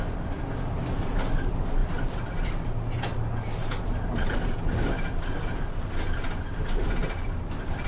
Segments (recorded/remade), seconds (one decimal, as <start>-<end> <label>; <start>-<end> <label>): 0.0-7.9 recorded